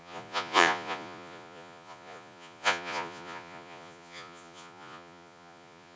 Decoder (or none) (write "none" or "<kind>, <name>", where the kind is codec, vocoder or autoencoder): vocoder, Vocos